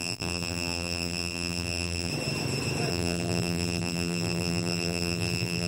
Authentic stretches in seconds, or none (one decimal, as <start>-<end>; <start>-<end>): 2.1-2.9